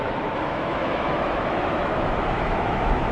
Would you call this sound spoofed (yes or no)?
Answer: yes